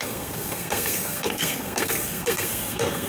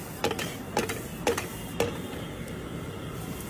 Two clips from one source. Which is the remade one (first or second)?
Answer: first